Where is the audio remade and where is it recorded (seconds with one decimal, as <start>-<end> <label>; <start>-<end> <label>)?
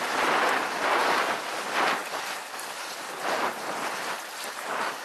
0.0-5.0 recorded